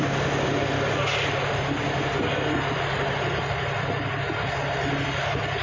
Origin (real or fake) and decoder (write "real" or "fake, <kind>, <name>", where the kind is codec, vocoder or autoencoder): real